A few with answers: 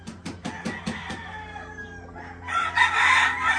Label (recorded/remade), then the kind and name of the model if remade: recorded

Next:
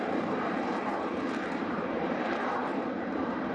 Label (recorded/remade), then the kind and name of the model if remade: remade, vocoder, BigVGAN v2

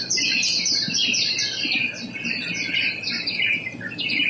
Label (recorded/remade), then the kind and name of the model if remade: remade, vocoder, BigVGAN v2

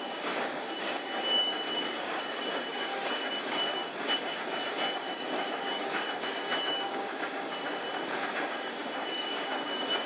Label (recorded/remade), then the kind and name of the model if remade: remade, codec, DAC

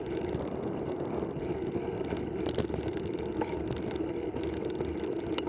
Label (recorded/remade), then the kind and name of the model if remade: recorded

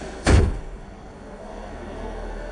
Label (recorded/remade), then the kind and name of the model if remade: remade, codec, SNAC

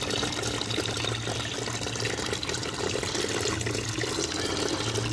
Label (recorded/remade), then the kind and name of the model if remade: recorded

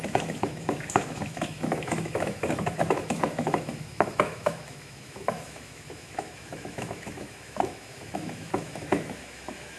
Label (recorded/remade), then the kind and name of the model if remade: remade, autoencoder, DAC-VAE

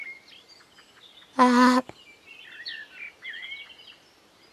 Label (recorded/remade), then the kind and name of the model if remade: recorded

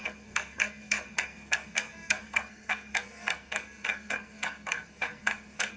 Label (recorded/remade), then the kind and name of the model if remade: remade, codec, SNAC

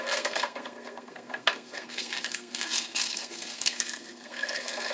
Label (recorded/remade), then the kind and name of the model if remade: remade, codec, SNAC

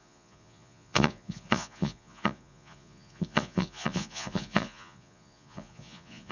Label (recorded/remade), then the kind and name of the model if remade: remade, vocoder, Vocos